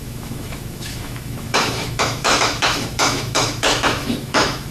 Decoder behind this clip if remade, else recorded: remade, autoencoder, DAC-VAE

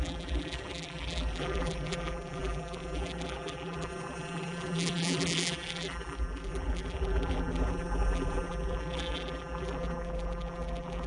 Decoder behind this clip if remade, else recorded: remade, vocoder, BigVGAN v2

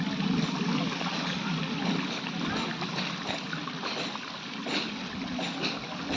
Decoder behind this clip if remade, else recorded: recorded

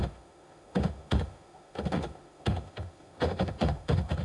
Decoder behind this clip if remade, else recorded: remade, autoencoder, DAC-VAE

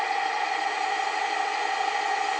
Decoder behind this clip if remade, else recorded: recorded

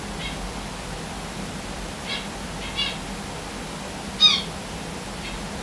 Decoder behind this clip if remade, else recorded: recorded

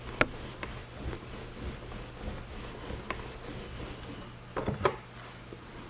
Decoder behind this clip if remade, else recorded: recorded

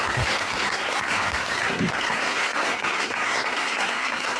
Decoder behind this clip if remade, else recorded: remade, codec, SNAC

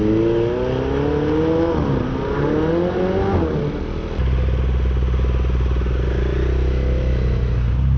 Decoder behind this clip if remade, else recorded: recorded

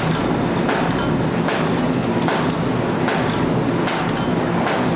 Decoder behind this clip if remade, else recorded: recorded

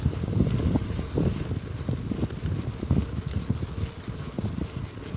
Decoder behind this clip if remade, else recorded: recorded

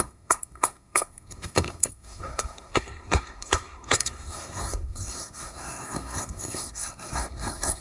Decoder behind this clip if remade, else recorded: remade, codec, SNAC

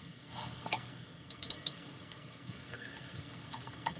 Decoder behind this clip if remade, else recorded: remade, codec, SNAC